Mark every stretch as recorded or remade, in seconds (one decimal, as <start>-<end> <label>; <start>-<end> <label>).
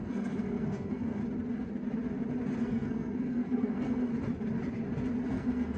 0.0-1.2 remade; 1.2-2.6 recorded; 2.6-4.1 remade; 4.1-5.3 recorded; 5.3-5.8 remade